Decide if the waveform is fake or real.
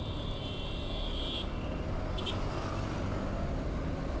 real